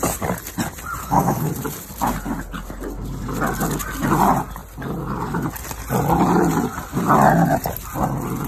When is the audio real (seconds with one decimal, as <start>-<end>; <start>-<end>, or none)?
0.0-1.0; 1.5-8.5